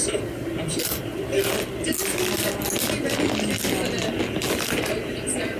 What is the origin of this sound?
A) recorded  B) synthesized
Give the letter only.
A